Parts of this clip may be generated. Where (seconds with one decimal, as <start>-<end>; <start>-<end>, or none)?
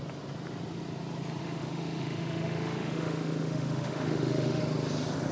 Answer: 1.4-4.6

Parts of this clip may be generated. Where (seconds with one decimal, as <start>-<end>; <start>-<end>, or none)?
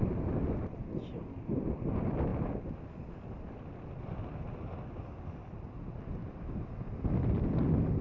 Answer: none